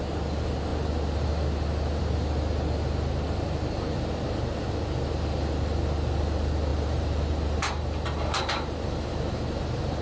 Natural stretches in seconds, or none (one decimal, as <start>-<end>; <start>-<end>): 0.0-6.7; 7.8-10.0